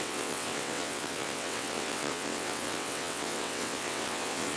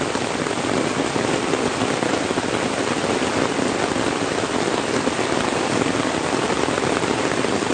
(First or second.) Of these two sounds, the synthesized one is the first